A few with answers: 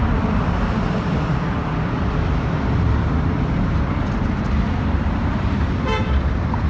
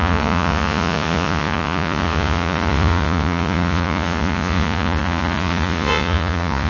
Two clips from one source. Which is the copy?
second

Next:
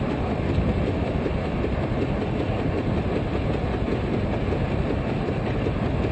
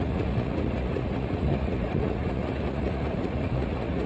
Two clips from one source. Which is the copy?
second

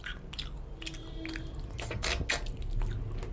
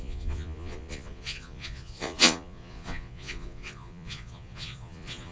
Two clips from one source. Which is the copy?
second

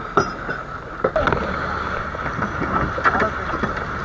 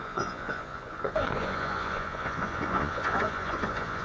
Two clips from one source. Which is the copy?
second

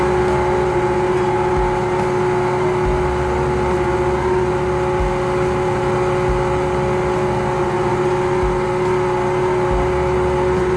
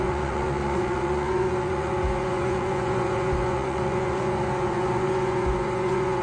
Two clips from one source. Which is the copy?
second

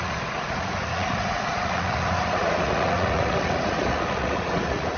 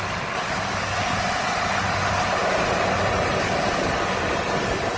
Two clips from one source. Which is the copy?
first